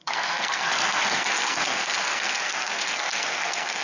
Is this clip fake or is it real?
fake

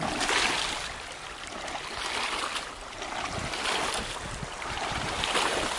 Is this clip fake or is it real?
real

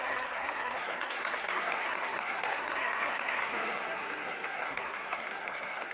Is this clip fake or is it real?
fake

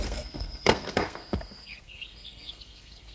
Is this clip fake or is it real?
fake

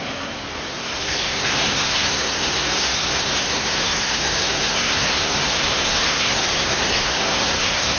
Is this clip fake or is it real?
fake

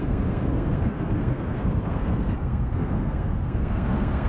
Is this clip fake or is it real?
fake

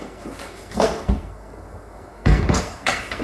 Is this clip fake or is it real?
fake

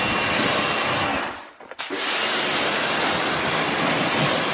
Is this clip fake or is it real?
real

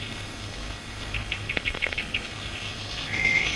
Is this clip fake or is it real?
fake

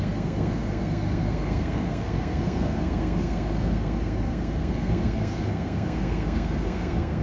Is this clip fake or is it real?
fake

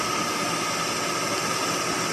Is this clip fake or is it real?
real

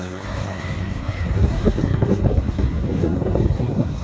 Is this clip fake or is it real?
fake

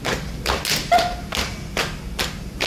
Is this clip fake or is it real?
real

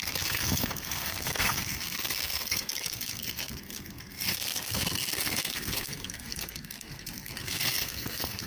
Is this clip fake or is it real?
fake